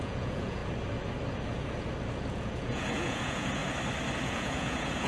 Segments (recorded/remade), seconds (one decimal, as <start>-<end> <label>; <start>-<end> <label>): 0.0-0.6 remade; 0.6-2.3 recorded; 2.3-3.6 remade; 3.6-4.2 recorded; 4.2-5.1 remade